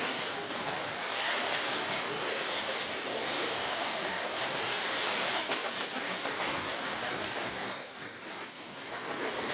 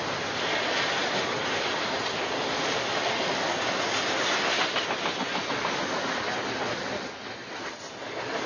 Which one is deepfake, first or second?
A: first